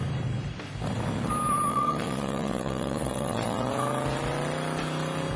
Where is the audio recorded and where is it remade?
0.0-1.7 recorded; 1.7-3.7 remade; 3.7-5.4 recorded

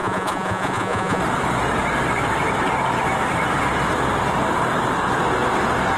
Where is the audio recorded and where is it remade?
0.0-1.2 remade; 1.2-6.0 recorded